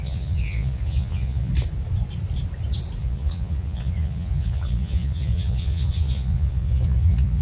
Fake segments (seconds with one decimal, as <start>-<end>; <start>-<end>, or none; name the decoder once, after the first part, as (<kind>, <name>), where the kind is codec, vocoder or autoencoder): 0.0-1.5 (vocoder, Vocos); 3.0-7.4